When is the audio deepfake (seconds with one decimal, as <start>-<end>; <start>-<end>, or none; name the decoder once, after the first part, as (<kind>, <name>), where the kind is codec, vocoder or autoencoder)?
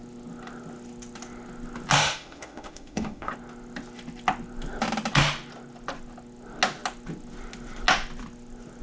2.0-3.3 (autoencoder, DAC-VAE)